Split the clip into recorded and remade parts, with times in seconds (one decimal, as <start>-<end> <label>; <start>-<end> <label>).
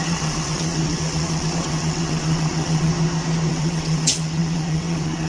0.0-2.9 remade; 2.9-3.5 recorded; 3.5-5.3 remade